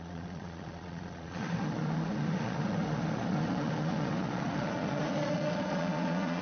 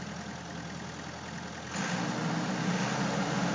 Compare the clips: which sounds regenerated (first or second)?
first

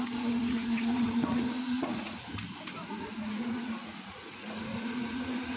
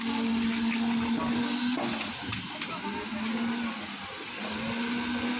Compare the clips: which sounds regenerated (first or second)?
first